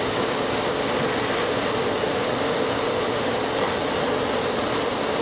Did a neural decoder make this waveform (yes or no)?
no